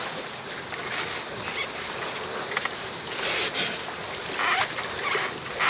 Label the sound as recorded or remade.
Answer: recorded